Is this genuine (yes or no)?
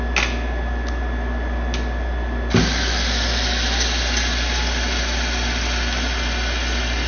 yes